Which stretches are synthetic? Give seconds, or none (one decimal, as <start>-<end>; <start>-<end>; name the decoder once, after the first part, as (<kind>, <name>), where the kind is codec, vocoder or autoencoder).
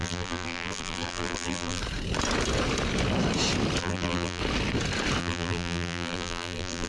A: 0.0-1.8 (vocoder, BigVGAN v2); 3.8-4.4; 5.2-6.9